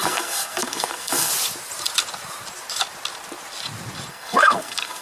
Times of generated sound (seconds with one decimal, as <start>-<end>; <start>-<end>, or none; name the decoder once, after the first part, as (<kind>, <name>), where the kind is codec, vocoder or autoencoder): 0.0-1.3 (codec, SNAC); 4.1-5.0